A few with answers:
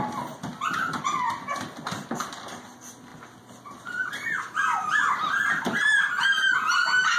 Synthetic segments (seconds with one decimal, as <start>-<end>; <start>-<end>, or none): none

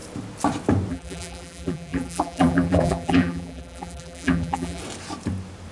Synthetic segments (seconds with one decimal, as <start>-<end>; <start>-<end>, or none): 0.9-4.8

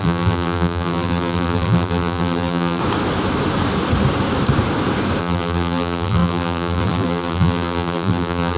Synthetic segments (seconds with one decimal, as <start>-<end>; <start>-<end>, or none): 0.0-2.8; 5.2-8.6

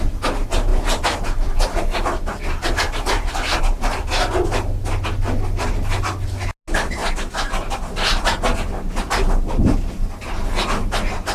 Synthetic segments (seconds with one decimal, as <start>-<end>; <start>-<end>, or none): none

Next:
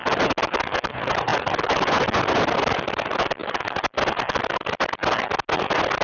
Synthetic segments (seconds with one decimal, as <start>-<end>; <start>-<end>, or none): 1.3-2.0; 3.4-5.2

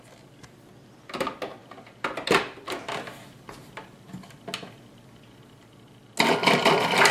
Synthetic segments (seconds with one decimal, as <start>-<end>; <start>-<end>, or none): 1.6-2.6

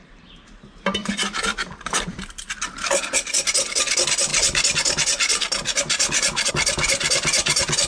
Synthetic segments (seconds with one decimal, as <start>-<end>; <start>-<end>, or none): 1.0-2.9